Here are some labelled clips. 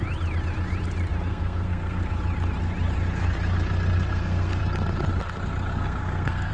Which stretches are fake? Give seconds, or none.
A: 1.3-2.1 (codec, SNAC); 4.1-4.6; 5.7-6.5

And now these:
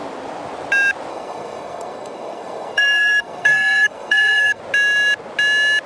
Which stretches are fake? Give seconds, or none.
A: 1.1-4.6 (codec, SNAC)

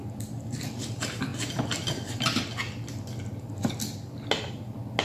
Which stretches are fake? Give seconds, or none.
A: none

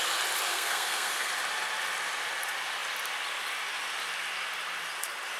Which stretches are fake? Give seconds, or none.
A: 0.5-1.3 (codec, SNAC)